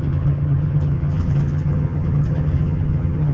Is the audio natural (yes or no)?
no